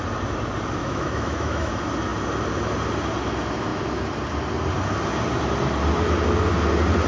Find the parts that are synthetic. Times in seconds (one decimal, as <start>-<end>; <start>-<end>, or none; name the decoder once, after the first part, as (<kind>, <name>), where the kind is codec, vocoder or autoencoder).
0.8-1.7 (autoencoder, DAC-VAE)